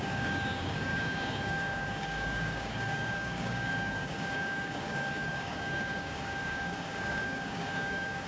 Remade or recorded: remade